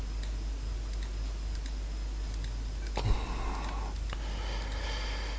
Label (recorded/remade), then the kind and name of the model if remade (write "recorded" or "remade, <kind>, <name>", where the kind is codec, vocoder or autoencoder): recorded